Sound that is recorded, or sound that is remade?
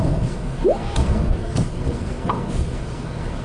remade